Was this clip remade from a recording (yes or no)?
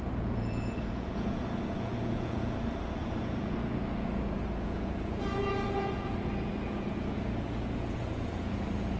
yes